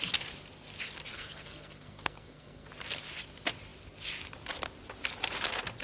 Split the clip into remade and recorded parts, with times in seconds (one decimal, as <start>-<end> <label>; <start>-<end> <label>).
0.0-1.1 recorded; 1.1-2.7 remade; 2.7-5.8 recorded